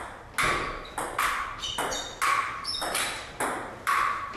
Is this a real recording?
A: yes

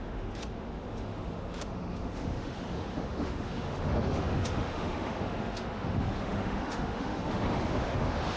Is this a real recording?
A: no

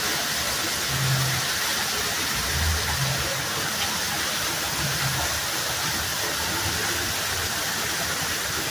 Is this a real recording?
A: yes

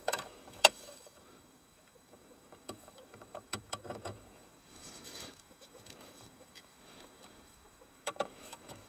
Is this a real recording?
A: no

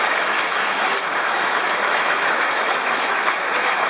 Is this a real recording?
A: no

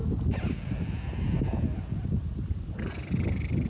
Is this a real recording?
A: yes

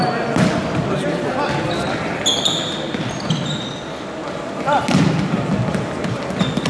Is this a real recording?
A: yes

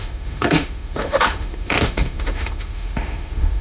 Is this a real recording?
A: no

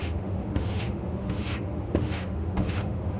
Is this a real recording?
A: no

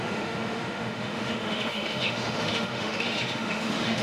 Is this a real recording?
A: no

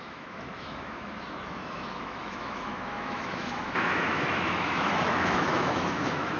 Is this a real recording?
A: no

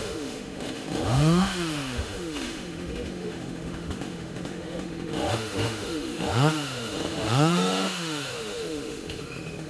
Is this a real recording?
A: no